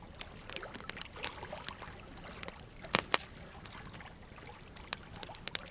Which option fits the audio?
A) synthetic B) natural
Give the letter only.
B